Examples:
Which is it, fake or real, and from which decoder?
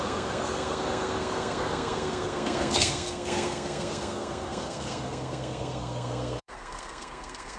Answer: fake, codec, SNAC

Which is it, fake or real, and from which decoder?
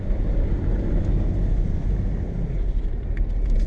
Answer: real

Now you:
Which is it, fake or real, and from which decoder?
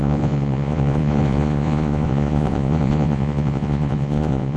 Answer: fake, vocoder, Vocos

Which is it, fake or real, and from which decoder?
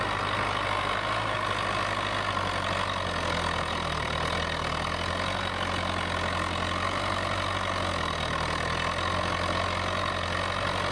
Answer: real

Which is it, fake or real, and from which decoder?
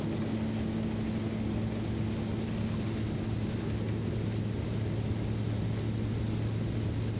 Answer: real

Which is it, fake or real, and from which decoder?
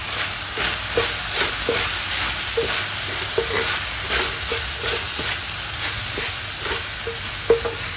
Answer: real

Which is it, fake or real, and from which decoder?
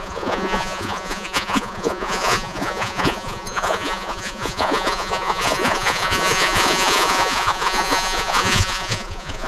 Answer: fake, vocoder, Vocos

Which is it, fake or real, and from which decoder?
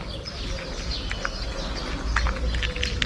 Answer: real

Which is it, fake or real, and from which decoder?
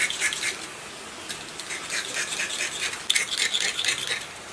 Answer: real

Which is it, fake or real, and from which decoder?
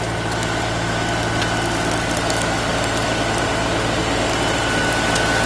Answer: real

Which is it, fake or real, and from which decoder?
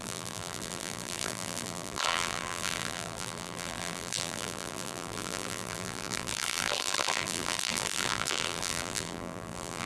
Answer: fake, vocoder, BigVGAN v2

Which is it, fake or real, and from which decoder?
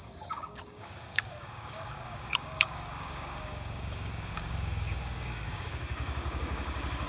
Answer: fake, codec, DAC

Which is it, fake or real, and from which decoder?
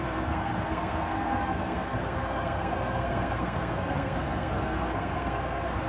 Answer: fake, codec, SNAC